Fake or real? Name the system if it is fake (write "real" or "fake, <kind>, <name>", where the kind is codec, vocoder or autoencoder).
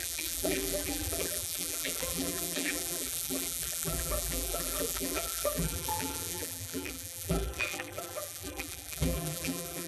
fake, vocoder, BigVGAN v2